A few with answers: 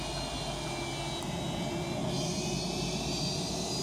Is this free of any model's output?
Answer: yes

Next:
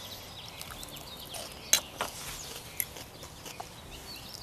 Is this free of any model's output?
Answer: yes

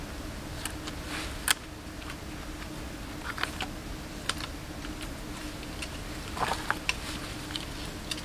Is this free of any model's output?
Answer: yes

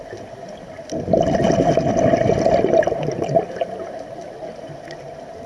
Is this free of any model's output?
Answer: yes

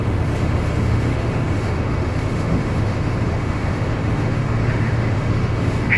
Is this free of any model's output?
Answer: no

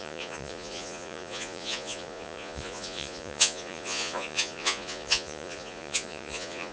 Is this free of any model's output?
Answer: no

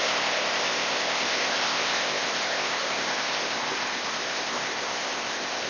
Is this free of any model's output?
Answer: no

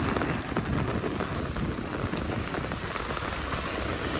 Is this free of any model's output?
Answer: yes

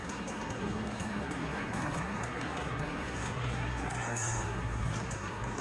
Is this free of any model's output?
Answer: no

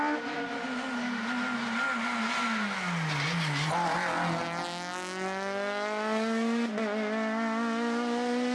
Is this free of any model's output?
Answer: yes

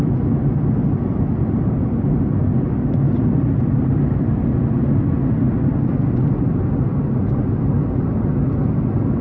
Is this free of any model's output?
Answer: yes